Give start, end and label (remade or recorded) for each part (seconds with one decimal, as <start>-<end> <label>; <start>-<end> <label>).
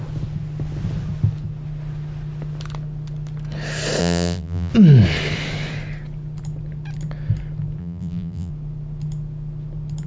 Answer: 0.0-4.0 recorded; 4.0-4.7 remade; 4.7-7.8 recorded; 7.8-8.5 remade; 8.5-10.1 recorded